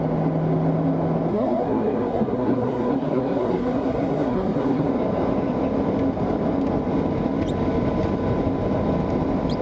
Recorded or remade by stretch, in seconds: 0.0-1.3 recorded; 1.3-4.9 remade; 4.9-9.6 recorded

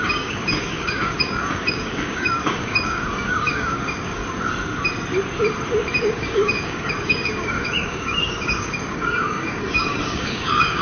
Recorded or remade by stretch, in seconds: 0.0-4.2 remade; 4.2-6.0 recorded; 6.0-10.8 remade

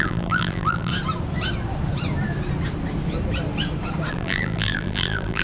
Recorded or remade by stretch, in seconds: 0.0-0.9 remade; 0.9-4.1 recorded; 4.1-5.4 remade